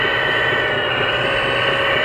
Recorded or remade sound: recorded